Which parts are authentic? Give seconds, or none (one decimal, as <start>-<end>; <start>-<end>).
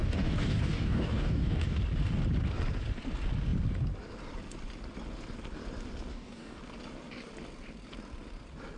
1.8-6.1; 6.6-8.8